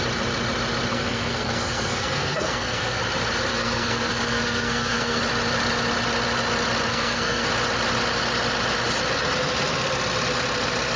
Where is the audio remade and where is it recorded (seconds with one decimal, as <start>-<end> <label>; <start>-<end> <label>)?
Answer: 0.0-0.9 recorded; 0.9-3.0 remade; 3.0-3.5 recorded; 3.5-5.2 remade; 5.2-6.9 recorded; 6.9-7.5 remade; 7.5-11.0 recorded